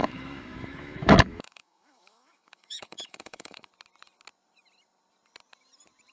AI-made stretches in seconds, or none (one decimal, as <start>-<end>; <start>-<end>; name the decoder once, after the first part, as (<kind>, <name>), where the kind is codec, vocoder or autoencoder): 0.0-3.7 (autoencoder, DAC-VAE)